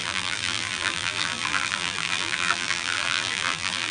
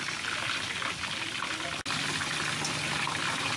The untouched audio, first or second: second